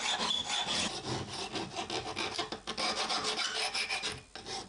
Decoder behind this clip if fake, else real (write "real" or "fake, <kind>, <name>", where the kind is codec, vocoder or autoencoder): real